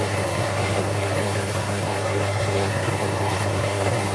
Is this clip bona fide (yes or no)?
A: no